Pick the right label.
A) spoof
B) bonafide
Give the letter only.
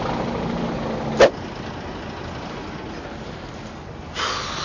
B